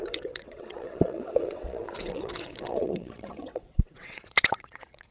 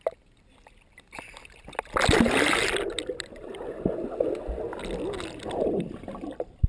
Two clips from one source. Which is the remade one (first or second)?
first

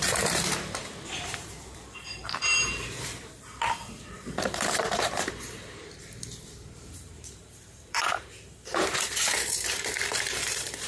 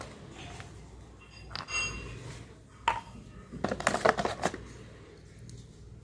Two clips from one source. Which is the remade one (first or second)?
first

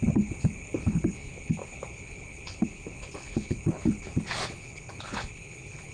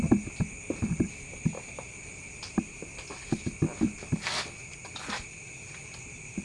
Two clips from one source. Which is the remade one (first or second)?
first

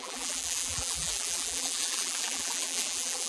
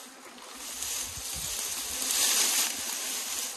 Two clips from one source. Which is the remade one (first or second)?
first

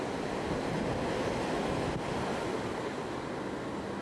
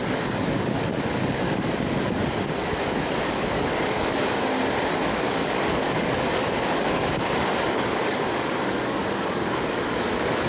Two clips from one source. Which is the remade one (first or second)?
second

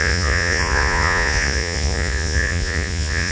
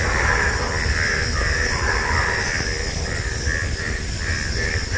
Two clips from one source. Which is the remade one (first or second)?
first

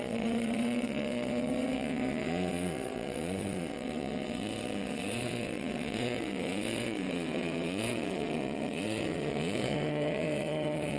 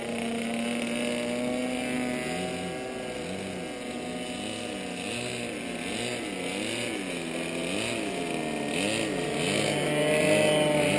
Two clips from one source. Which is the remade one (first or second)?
first